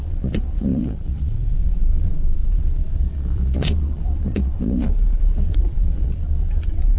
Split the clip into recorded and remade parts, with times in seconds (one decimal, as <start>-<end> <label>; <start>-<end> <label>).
0.0-7.0 remade

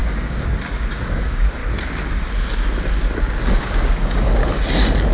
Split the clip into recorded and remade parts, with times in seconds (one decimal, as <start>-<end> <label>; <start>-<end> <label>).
0.0-1.6 remade; 1.6-3.5 recorded; 3.5-4.4 remade; 4.4-5.1 recorded

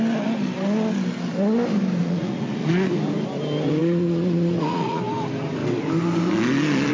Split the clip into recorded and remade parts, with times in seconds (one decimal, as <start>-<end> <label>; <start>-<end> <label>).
0.0-2.0 recorded; 2.0-2.7 remade; 2.7-3.8 recorded; 3.8-5.0 remade; 5.0-6.9 recorded

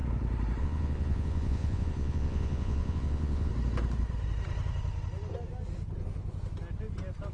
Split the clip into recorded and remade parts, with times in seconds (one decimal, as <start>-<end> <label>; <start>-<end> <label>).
0.0-0.6 recorded; 0.6-3.5 remade; 3.5-7.3 recorded